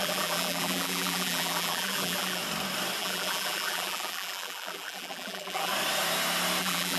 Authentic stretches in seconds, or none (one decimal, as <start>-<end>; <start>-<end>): 2.4-3.0; 5.7-6.6